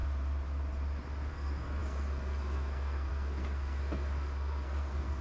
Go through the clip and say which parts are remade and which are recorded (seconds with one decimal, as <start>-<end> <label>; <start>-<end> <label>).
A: 0.0-1.3 recorded; 1.3-5.2 remade